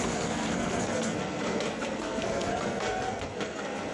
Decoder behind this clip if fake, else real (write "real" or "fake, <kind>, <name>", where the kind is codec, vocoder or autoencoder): fake, codec, SNAC